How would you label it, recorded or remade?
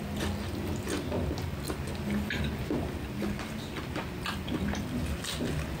recorded